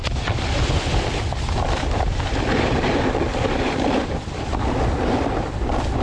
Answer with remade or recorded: recorded